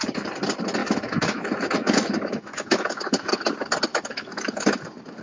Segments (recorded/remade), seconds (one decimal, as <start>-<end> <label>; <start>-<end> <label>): 0.0-0.8 recorded; 0.8-3.3 remade; 3.3-3.9 recorded; 3.9-4.8 remade; 4.8-5.2 recorded